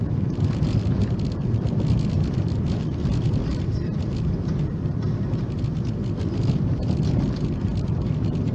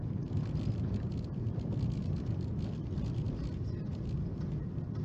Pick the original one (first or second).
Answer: second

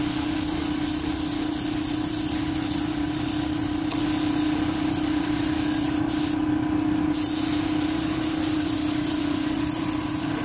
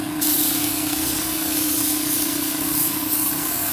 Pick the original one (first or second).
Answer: first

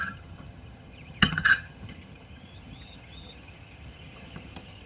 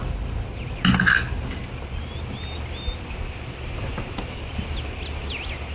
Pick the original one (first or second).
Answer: second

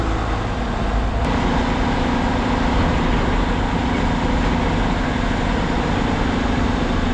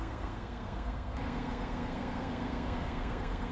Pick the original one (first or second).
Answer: first